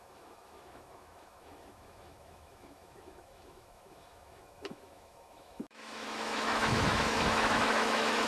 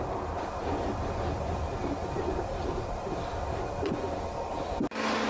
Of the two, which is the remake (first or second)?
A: first